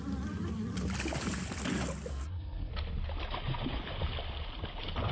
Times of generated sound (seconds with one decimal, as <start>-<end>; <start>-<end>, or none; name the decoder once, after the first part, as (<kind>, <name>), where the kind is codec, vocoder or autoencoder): 2.1-2.7 (codec, SNAC)